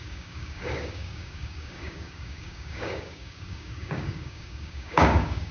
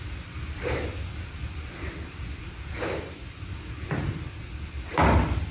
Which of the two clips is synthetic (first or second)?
first